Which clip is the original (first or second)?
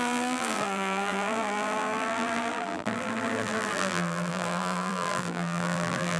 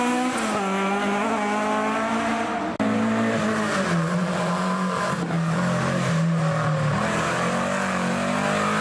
second